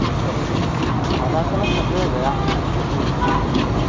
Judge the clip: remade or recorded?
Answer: recorded